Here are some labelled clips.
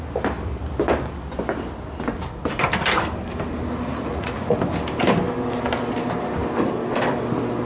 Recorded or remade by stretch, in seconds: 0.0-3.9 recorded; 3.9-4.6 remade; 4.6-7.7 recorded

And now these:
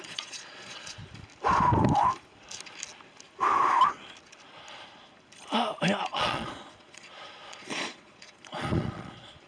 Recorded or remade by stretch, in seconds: 0.0-1.0 remade; 1.0-6.0 recorded; 6.0-9.5 remade